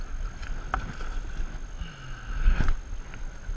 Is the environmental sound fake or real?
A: real